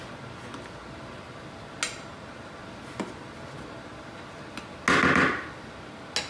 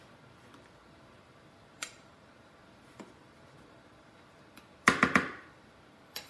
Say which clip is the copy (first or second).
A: second